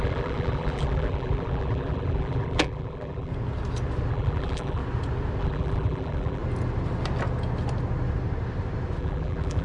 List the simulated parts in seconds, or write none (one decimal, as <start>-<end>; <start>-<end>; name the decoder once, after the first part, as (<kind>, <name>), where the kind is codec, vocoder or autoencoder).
0.0-3.3 (vocoder, BigVGAN v2); 4.1-4.8; 5.4-6.4; 9.0-9.6